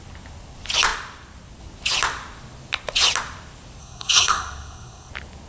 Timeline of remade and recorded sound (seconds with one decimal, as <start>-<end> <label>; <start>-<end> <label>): 0.0-3.8 recorded; 3.8-5.1 remade; 5.1-5.5 recorded